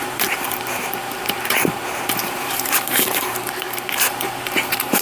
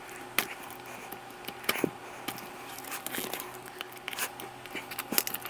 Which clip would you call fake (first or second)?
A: first